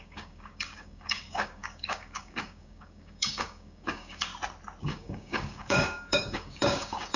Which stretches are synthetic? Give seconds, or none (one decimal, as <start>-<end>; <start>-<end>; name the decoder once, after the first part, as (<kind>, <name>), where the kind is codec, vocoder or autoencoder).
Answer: 0.0-4.3 (codec, DAC); 4.8-7.2